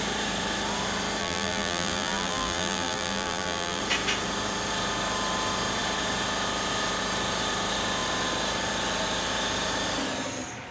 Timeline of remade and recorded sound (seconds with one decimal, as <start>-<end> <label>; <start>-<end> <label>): 0.0-1.2 recorded; 1.2-3.8 remade; 3.8-10.7 recorded